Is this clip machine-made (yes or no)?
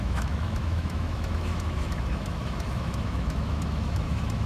yes